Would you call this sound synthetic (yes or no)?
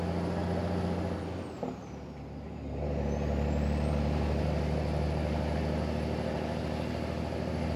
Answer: no